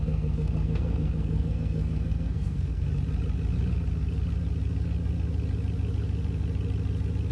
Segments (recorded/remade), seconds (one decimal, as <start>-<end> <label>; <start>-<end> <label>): 0.0-2.9 remade; 2.9-7.3 recorded